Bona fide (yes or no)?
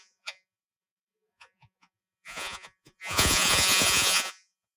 no